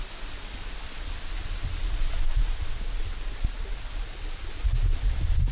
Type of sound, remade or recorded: recorded